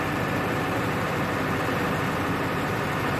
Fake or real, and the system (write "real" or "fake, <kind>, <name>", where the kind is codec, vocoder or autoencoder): real